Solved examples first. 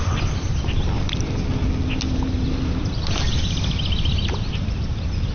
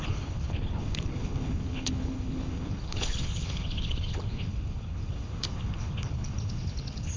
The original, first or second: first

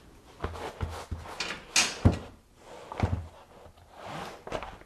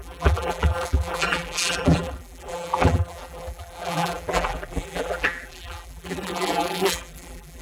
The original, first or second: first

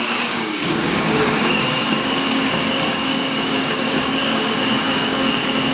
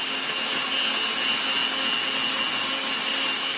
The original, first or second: second